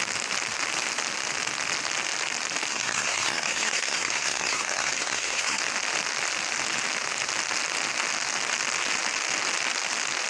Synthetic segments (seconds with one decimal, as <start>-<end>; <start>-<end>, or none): 2.7-5.6